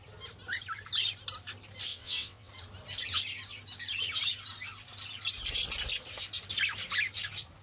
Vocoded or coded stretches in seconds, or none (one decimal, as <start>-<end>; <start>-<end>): 1.9-2.5